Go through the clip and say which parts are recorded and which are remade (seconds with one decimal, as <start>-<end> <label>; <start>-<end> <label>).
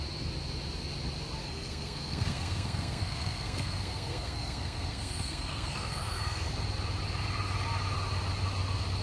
0.0-1.4 recorded; 1.4-6.5 remade; 6.5-9.0 recorded